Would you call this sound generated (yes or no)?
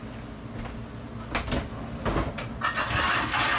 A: no